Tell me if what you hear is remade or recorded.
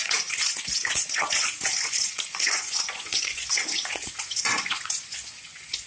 remade